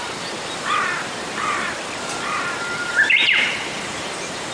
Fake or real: fake